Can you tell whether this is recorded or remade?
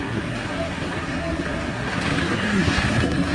remade